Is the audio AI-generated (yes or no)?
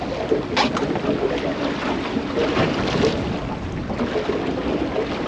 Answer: no